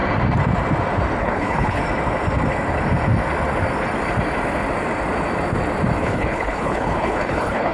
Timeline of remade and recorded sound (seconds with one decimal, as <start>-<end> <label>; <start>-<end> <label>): 0.0-1.2 recorded; 1.2-1.8 remade; 1.8-6.0 recorded; 6.0-7.7 remade